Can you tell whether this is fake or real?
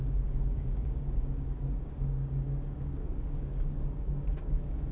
fake